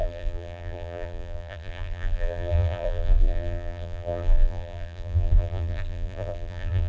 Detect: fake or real fake